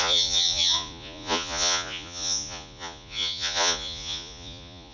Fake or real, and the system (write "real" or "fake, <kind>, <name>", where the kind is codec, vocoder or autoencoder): fake, vocoder, Vocos